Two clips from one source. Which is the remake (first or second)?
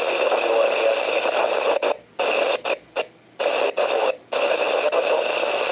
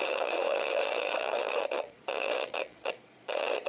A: second